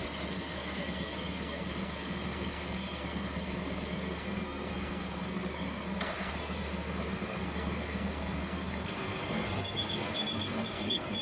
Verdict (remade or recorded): remade